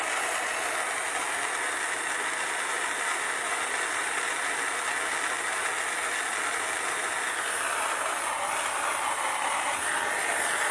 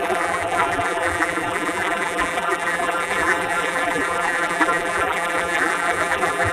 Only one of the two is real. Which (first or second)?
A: first